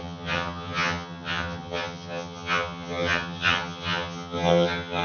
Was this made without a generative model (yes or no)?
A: no